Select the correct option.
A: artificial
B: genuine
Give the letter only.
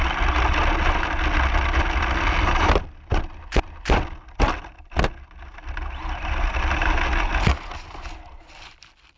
B